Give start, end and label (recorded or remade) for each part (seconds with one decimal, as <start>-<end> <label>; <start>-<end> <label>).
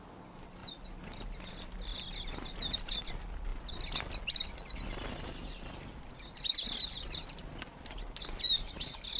0.0-9.2 recorded